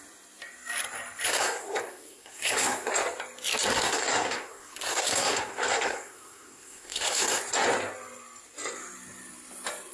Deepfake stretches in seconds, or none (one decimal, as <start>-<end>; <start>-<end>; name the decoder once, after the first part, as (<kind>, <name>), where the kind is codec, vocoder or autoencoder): 1.3-2.9 (codec, SNAC); 3.7-7.4

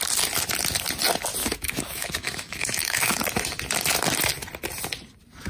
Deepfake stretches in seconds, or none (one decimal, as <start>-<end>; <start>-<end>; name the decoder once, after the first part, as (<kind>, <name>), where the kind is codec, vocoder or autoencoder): 1.4-3.2 (autoencoder, DAC-VAE)

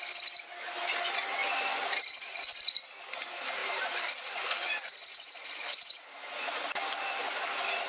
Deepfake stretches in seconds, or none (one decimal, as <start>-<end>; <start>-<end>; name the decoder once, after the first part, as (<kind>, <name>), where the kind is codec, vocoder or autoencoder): 3.6-5.5 (vocoder, BigVGAN v2)